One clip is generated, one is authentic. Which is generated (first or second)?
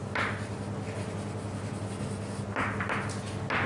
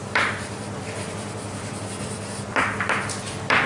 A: second